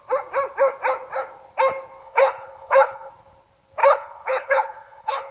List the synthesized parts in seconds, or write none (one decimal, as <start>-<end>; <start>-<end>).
2.0-3.1; 3.8-5.3